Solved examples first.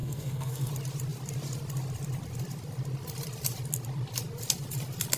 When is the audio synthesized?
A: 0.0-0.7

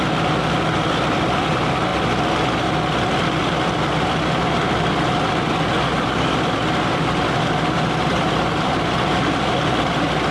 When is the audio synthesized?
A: none